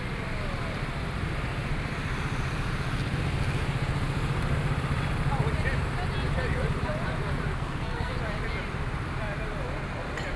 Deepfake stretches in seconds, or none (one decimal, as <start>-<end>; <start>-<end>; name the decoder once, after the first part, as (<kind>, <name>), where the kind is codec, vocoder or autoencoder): 7.5-8.1 (codec, SNAC)